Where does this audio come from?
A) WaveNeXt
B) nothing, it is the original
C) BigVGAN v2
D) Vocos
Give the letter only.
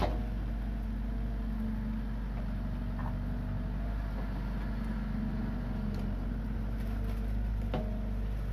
B